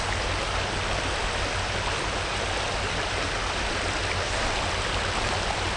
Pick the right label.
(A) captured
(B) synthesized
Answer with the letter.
A